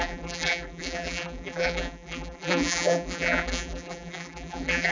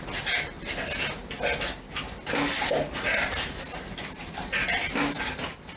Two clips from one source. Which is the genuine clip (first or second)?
second